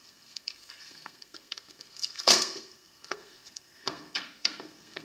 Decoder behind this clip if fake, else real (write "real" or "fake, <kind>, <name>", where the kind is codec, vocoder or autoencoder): fake, codec, SNAC